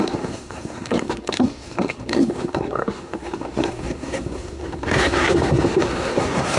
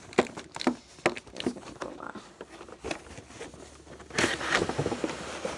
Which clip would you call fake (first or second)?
first